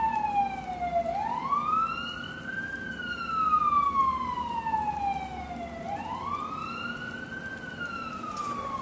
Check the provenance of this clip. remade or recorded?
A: recorded